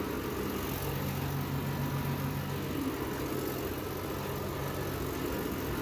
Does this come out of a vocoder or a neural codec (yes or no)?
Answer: no